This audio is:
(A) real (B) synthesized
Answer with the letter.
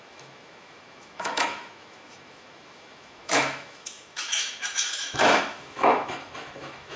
B